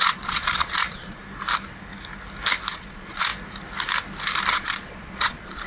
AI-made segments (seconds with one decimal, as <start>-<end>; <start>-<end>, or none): 0.0-1.2; 2.7-3.3; 4.5-5.7